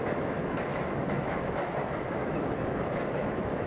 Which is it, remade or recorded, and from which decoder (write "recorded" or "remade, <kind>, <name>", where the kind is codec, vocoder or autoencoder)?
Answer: remade, autoencoder, DAC-VAE